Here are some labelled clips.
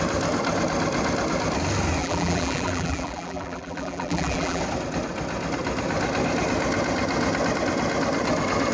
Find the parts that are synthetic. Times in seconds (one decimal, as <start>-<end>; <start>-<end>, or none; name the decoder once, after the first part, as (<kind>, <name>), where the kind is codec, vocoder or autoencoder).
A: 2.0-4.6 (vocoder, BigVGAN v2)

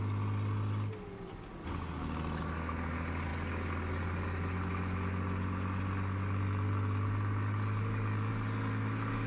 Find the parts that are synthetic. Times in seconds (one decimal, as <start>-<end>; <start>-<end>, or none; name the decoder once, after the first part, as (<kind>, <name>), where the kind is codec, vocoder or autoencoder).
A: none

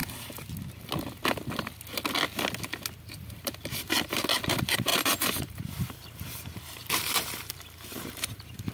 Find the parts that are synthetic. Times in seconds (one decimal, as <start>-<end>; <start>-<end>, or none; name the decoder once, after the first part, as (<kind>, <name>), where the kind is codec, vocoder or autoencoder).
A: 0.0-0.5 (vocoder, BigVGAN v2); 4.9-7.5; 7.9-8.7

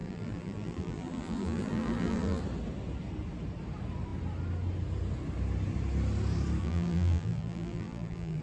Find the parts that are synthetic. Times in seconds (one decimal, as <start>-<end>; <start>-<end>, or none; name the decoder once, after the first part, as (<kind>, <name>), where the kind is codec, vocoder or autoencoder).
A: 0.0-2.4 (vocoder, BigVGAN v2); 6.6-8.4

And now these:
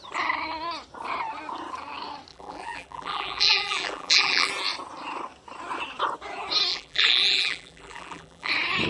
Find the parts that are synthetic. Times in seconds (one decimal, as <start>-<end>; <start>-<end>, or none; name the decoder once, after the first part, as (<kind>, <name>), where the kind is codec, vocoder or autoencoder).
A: 2.3-4.5 (vocoder, BigVGAN v2); 6.7-8.5